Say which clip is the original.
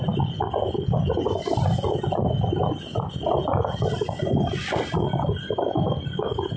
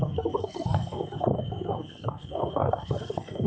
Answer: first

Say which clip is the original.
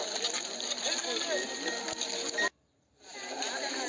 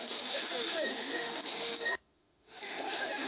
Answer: first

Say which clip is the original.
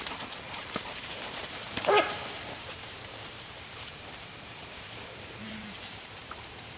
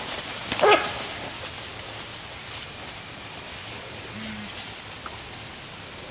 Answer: second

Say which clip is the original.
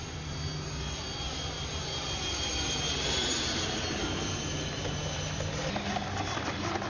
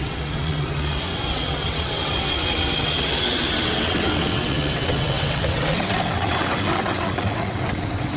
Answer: first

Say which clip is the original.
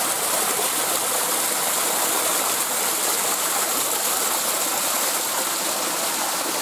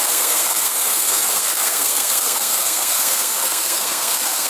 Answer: first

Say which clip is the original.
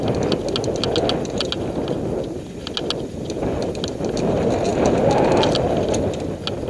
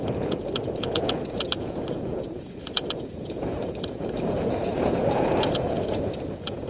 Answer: first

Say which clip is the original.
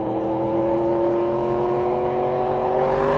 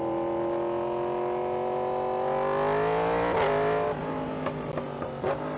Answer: second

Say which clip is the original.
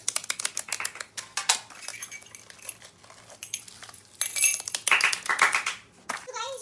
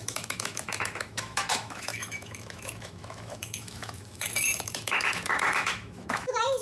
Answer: first